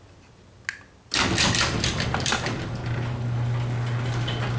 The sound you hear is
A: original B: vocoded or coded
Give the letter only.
A